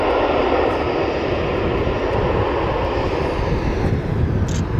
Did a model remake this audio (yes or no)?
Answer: no